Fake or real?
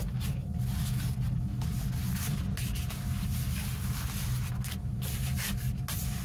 real